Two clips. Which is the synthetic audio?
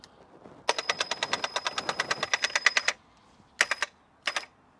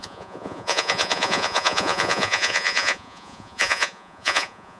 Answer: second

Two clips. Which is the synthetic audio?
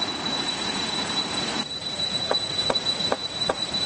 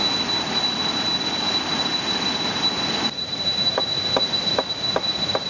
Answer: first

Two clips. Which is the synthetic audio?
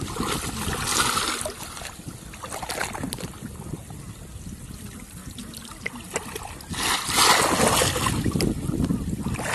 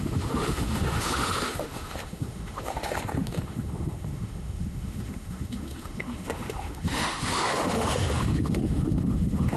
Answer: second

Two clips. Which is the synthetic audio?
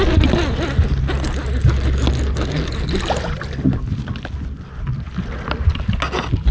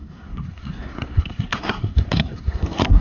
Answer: second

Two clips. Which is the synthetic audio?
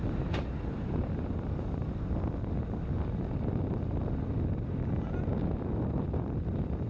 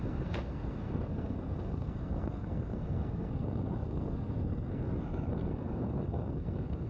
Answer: second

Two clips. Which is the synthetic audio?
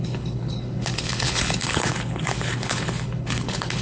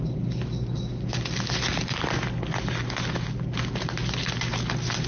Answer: first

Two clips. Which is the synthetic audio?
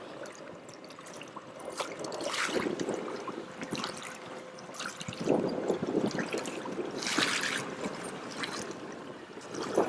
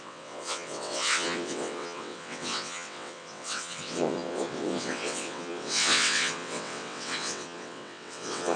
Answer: second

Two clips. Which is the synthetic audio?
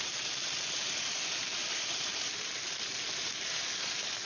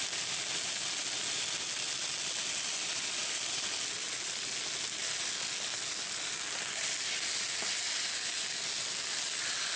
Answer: first